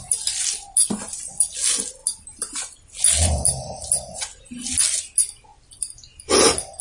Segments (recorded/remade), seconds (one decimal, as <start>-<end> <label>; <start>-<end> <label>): 0.0-6.8 recorded